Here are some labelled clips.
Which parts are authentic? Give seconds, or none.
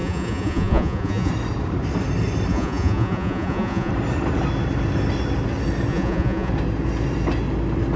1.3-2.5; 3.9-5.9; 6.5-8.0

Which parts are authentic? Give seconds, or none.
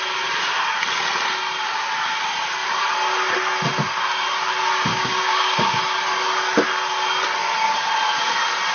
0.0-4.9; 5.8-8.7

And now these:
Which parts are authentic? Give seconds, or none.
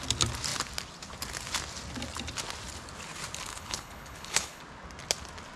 0.0-3.5; 4.6-5.6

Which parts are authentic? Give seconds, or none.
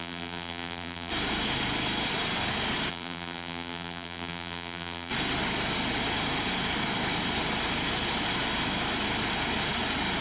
1.1-2.9; 5.1-10.2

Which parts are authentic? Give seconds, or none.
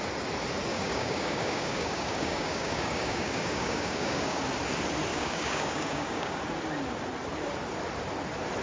0.0-0.7; 4.4-5.1; 6.4-8.6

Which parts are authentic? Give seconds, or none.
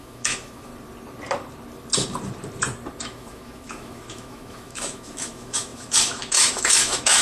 0.7-3.0